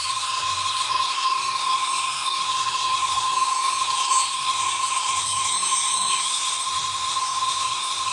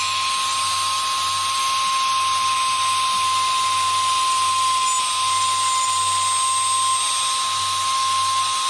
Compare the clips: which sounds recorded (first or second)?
second